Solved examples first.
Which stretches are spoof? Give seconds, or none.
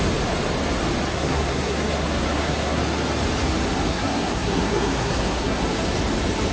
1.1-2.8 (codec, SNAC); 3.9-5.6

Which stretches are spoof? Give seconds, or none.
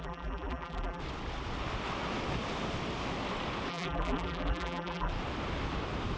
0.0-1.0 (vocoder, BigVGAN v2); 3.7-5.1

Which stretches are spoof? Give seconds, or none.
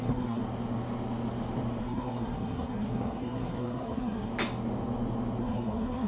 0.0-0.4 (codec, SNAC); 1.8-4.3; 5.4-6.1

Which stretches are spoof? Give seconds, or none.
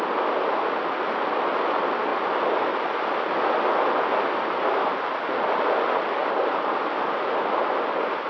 none